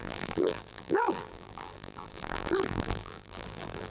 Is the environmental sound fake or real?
fake